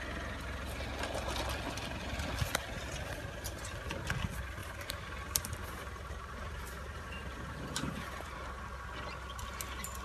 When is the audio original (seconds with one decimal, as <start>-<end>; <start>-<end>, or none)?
0.0-4.6; 8.6-10.0